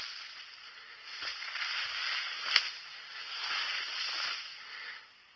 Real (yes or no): yes